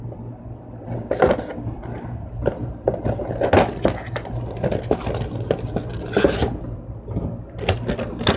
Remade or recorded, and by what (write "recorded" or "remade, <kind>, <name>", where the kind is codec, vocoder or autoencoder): recorded